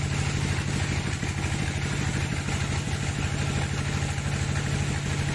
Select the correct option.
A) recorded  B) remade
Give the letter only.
A